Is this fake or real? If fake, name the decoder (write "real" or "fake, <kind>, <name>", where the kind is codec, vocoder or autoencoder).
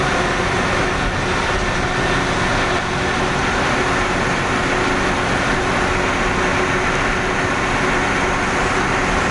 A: real